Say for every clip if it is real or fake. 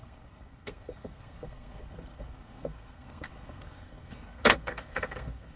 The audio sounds fake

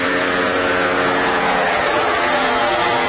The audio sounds fake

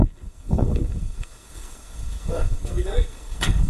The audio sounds fake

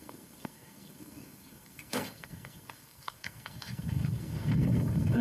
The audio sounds fake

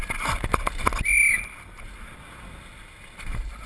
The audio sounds real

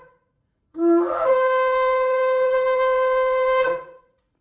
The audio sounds fake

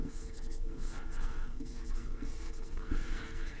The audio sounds fake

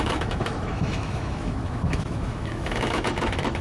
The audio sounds fake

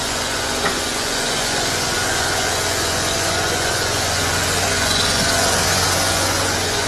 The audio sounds fake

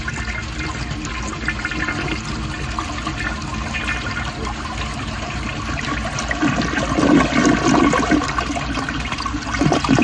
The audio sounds real